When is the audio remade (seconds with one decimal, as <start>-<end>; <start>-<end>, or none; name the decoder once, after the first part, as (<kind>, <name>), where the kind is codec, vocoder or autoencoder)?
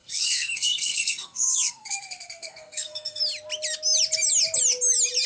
0.0-3.2 (codec, SNAC)